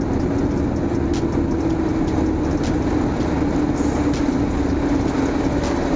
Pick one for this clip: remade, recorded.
recorded